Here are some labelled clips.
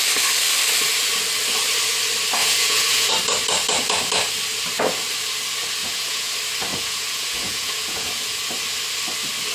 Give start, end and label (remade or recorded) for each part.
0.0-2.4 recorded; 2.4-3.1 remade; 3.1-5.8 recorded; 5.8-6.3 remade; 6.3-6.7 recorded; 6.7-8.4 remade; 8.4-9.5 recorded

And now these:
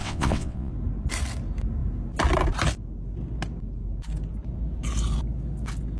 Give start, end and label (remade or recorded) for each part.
0.0-0.7 remade; 0.7-6.0 recorded

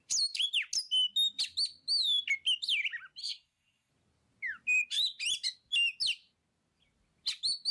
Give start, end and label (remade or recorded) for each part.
0.0-3.2 recorded; 3.2-3.9 remade; 3.9-7.7 recorded

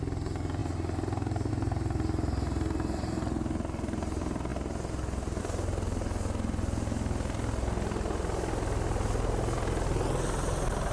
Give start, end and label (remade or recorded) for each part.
0.0-10.9 recorded

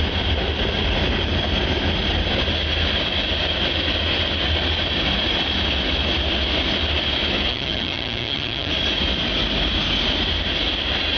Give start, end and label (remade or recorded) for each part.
0.0-7.5 recorded; 7.5-8.7 remade; 8.7-11.2 recorded

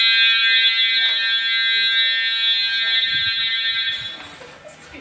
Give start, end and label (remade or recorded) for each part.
0.0-5.0 recorded